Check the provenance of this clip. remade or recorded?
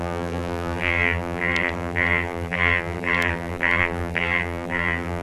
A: remade